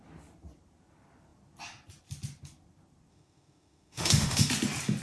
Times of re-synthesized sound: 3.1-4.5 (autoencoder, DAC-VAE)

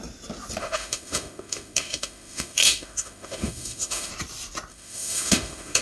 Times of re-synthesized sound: 0.6-4.1 (autoencoder, DAC-VAE); 4.7-5.8